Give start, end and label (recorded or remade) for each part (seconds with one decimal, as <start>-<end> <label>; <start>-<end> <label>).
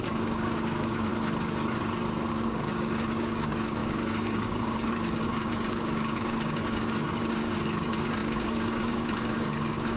0.0-1.1 remade; 1.1-2.3 recorded; 2.3-10.0 remade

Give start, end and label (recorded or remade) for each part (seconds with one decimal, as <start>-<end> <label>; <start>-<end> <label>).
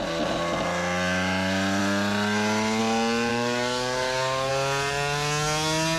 0.0-3.3 recorded; 3.3-4.5 remade; 4.5-6.0 recorded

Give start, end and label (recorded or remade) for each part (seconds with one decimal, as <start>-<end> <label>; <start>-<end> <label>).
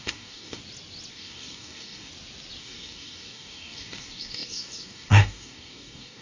0.0-0.6 remade; 0.6-1.1 recorded; 1.1-2.1 remade; 2.1-2.6 recorded; 2.6-6.2 remade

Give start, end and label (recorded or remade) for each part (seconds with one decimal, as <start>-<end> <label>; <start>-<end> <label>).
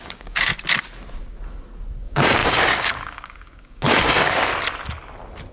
0.0-0.5 remade; 0.5-2.0 recorded; 2.0-4.5 remade; 4.5-5.5 recorded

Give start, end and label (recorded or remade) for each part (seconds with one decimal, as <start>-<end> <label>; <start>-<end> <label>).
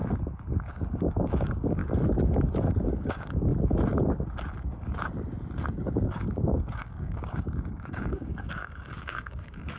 0.0-0.7 recorded; 0.7-1.8 remade; 1.8-2.9 recorded; 2.9-3.5 remade; 3.5-5.7 recorded; 5.7-9.8 remade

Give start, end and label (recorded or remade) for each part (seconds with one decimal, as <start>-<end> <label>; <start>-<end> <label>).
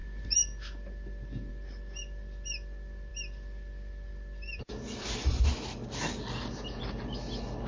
0.0-7.7 recorded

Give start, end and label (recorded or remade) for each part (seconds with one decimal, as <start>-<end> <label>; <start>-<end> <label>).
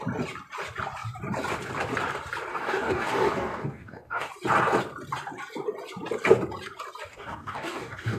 0.0-2.5 recorded; 2.5-4.3 remade; 4.3-7.1 recorded; 7.1-8.2 remade